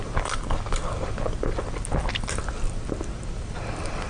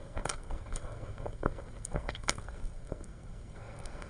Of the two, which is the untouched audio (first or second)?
first